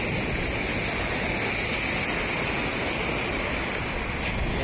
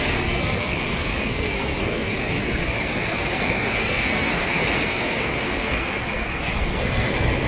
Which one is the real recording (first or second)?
first